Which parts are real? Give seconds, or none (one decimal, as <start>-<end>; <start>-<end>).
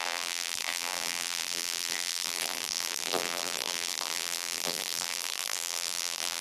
none